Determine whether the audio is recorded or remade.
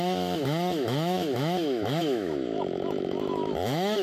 remade